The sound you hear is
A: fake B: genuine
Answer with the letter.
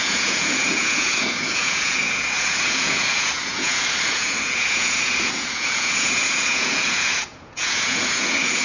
A